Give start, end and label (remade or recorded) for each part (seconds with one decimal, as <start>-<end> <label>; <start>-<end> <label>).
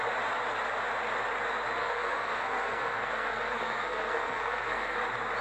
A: 0.0-1.8 recorded; 1.8-5.0 remade; 5.0-5.4 recorded